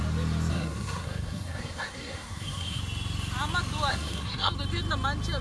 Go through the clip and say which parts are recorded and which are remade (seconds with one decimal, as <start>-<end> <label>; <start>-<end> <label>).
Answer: 0.0-0.5 recorded; 0.5-2.8 remade; 2.8-3.9 recorded; 3.9-4.5 remade; 4.5-5.4 recorded